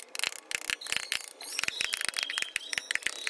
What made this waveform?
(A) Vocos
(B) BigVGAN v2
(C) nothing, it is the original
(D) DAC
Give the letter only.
C